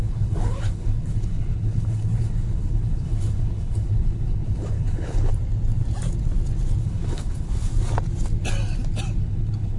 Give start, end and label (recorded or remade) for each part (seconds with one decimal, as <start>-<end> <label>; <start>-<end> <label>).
0.0-5.3 remade; 5.3-6.8 recorded; 6.8-7.7 remade; 7.7-9.2 recorded; 9.2-9.8 remade